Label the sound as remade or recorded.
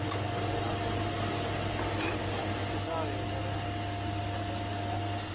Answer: recorded